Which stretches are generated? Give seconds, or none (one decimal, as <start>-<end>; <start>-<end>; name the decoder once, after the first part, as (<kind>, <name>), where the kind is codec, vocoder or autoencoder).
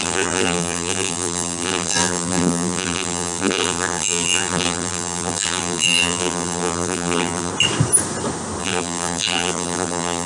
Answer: 0.0-7.5 (vocoder, BigVGAN v2); 8.6-10.3